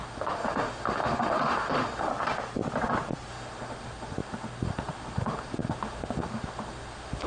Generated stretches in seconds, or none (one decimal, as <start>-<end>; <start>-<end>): 0.0-2.1; 3.3-7.3